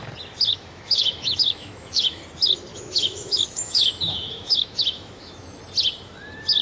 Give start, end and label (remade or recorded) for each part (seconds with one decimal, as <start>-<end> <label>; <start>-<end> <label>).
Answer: 0.0-0.5 recorded; 0.5-2.2 remade; 2.2-2.7 recorded; 2.7-5.6 remade; 5.6-6.6 recorded